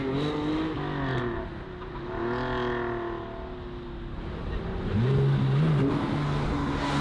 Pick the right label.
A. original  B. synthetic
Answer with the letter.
A